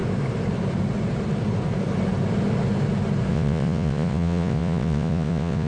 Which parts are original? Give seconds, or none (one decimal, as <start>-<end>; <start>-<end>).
0.0-3.3